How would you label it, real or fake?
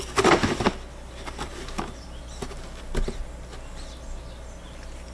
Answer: real